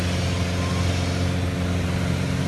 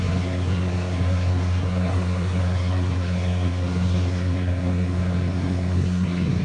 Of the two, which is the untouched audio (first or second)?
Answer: first